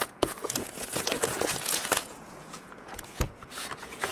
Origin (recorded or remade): remade